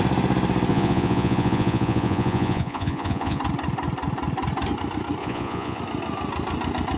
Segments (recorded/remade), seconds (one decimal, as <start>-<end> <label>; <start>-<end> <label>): 0.0-0.7 recorded; 0.7-3.4 remade; 3.4-5.2 recorded; 5.2-5.8 remade; 5.8-7.0 recorded